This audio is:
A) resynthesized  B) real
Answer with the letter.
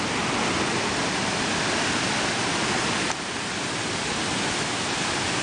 B